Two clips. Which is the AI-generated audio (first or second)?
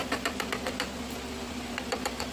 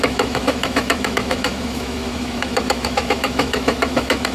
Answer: second